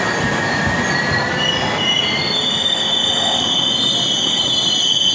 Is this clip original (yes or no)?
yes